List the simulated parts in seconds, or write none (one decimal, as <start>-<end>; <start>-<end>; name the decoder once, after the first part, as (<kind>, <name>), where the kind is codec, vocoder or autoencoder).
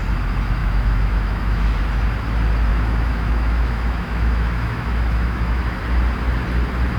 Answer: 0.6-1.8 (autoencoder, DAC-VAE); 2.7-5.6